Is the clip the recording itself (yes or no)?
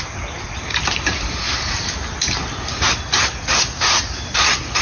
yes